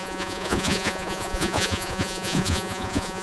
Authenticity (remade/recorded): remade